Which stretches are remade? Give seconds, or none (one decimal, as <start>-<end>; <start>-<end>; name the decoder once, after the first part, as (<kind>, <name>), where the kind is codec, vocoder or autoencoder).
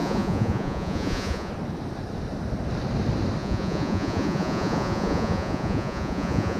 0.0-1.5 (vocoder, Vocos); 3.4-6.6